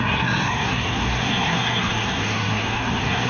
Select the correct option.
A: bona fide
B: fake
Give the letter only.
B